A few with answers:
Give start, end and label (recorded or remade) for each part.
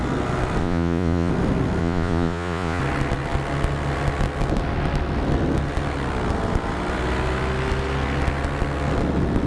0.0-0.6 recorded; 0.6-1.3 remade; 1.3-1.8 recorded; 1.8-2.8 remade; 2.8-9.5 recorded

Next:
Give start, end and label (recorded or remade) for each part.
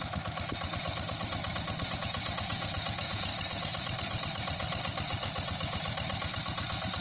0.0-2.0 recorded; 2.0-3.3 remade; 3.3-7.0 recorded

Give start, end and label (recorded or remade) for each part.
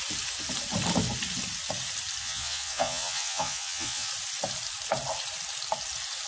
0.0-2.2 recorded; 2.2-4.1 remade; 4.1-6.3 recorded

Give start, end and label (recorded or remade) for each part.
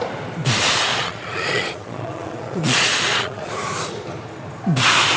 0.0-0.9 recorded; 0.9-3.5 remade; 3.5-5.2 recorded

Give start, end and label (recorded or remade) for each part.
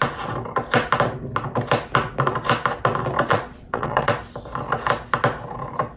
0.0-3.3 recorded; 3.3-4.1 remade; 4.1-6.0 recorded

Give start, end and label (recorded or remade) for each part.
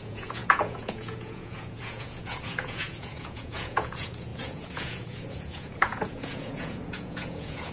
0.0-7.7 remade